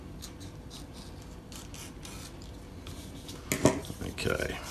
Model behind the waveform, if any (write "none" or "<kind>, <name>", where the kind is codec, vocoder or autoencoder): none